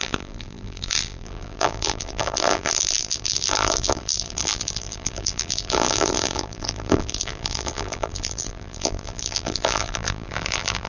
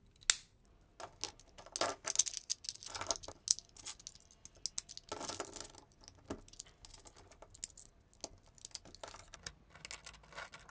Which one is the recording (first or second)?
second